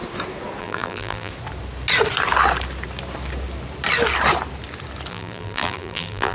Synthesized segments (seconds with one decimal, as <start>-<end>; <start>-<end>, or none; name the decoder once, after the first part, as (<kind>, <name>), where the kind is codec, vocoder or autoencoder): 0.6-1.3 (vocoder, BigVGAN v2); 5.1-6.3